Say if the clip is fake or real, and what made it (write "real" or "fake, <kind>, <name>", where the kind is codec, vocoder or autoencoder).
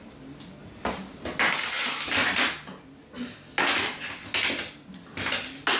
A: real